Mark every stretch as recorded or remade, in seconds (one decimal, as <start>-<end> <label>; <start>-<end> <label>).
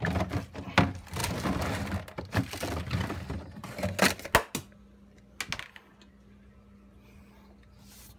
0.0-8.2 recorded